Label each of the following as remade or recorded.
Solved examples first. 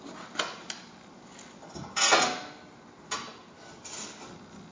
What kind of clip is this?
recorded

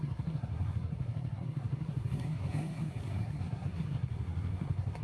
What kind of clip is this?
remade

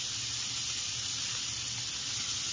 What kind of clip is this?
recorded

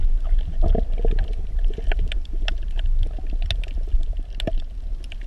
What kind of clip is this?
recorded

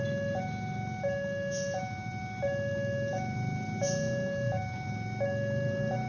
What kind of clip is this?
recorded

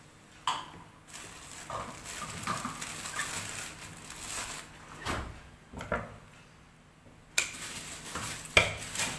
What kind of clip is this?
recorded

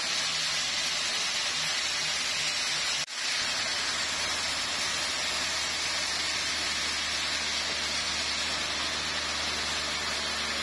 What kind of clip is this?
recorded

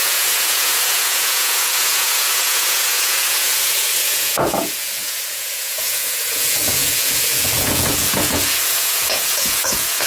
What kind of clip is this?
remade